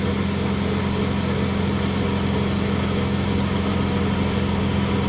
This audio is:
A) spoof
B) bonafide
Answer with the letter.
B